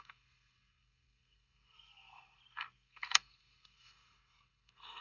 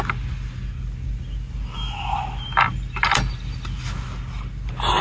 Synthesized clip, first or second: first